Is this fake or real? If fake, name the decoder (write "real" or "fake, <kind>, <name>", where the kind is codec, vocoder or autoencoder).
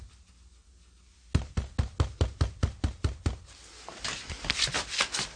real